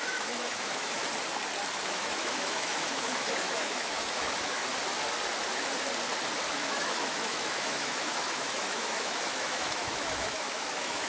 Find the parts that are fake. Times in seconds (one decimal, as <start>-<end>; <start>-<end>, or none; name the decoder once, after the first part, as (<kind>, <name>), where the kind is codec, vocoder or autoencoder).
0.0-1.0 (autoencoder, DAC-VAE); 1.8-4.6; 6.5-11.1